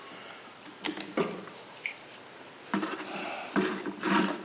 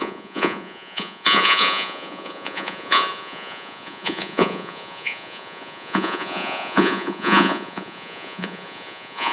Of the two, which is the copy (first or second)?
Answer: second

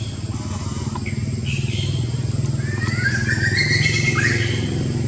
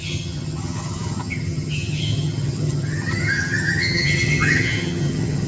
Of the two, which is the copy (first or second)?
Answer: second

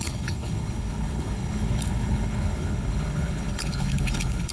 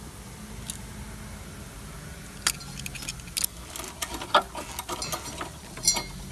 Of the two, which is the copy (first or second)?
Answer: first